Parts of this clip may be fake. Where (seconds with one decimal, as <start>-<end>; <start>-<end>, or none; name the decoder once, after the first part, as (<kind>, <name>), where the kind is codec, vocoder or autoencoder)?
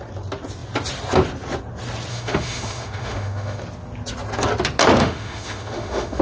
2.1-3.6 (autoencoder, DAC-VAE); 5.0-6.2